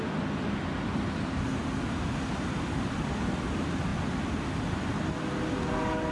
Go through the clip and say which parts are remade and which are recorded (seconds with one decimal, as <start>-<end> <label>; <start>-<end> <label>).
0.0-6.1 recorded